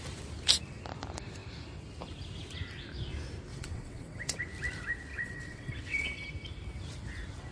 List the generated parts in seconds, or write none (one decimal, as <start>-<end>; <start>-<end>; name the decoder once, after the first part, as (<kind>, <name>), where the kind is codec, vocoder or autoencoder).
3.5-4.4 (vocoder, WaveNeXt); 5.1-6.3